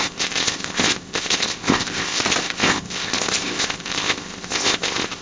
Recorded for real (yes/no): no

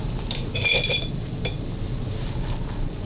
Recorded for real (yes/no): yes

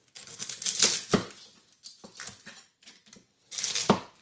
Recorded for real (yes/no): yes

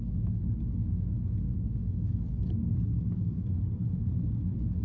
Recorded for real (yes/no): no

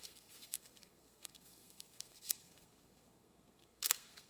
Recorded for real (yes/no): no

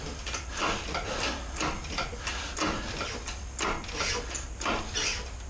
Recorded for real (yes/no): yes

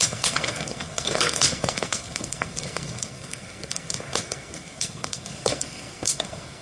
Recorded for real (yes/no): no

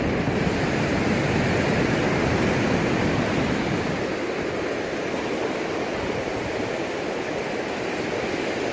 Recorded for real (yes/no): yes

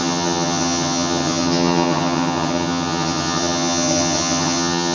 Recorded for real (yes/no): no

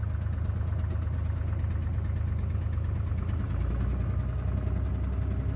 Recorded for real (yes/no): yes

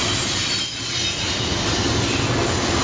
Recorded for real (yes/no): yes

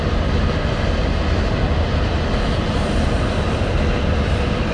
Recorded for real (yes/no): yes